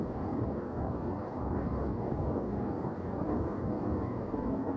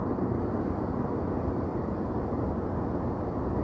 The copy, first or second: first